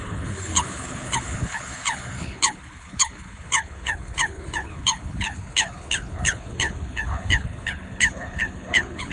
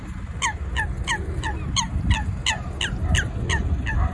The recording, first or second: second